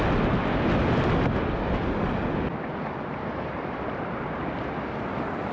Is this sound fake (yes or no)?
no